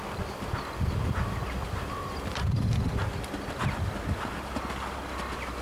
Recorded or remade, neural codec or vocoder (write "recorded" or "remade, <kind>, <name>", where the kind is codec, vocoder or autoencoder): recorded